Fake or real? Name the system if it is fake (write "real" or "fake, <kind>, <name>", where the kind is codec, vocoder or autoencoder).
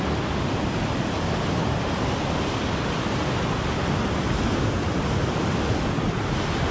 real